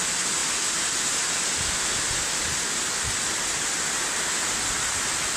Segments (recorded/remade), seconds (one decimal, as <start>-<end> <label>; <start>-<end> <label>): 0.0-5.4 recorded